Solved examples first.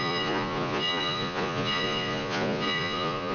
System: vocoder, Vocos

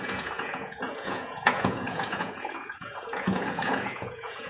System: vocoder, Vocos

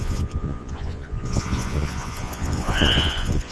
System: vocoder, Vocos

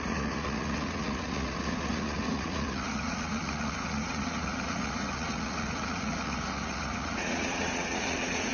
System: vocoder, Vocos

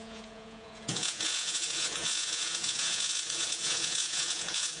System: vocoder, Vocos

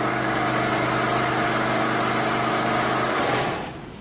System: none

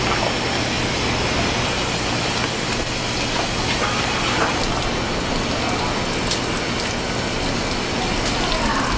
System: none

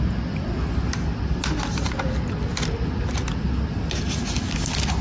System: none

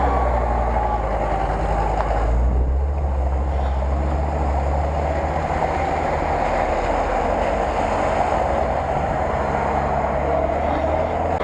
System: none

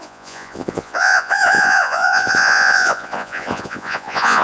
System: vocoder, Vocos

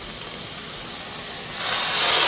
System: none